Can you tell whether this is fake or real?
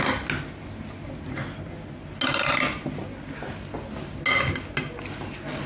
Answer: real